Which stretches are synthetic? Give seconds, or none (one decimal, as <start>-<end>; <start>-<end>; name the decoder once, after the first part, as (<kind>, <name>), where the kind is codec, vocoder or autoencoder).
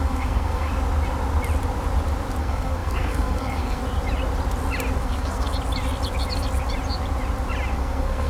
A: 0.0-0.7 (codec, SNAC); 2.4-3.8; 5.0-5.5; 7.7-8.3